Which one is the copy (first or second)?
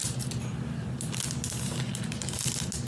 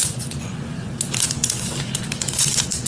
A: second